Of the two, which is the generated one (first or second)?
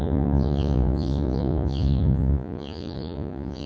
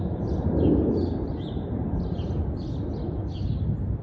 first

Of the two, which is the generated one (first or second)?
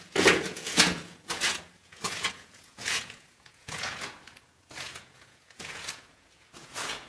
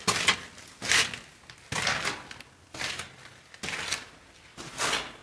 first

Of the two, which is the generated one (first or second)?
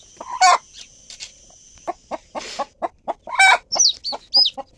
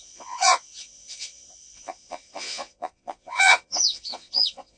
second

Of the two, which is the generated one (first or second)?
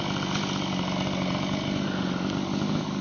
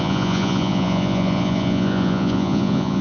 second